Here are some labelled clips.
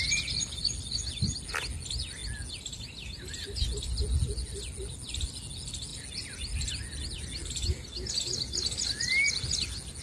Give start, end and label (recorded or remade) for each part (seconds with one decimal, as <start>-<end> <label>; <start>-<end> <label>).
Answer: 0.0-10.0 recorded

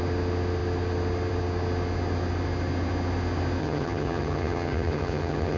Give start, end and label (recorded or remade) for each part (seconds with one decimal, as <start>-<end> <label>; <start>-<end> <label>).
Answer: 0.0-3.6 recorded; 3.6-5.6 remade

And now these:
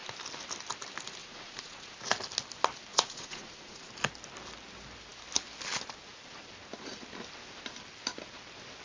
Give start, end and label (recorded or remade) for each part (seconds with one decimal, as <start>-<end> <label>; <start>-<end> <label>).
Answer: 0.0-1.2 recorded; 1.2-1.9 remade; 1.9-2.9 recorded; 2.9-3.9 remade; 3.9-8.8 recorded

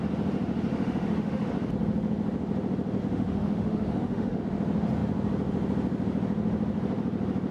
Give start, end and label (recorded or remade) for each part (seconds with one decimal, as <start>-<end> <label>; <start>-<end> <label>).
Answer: 0.0-0.7 recorded; 0.7-1.5 remade; 1.5-3.0 recorded; 3.0-4.4 remade; 4.4-7.5 recorded